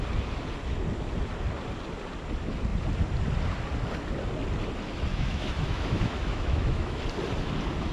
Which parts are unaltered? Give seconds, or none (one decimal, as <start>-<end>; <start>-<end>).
0.0-5.1; 7.0-7.9